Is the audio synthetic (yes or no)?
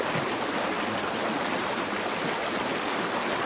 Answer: no